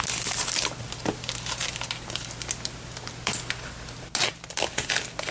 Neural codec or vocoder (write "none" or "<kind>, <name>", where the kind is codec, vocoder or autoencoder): none